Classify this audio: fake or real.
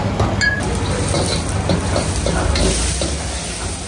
real